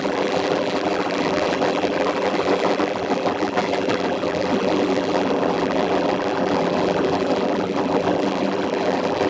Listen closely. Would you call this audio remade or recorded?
remade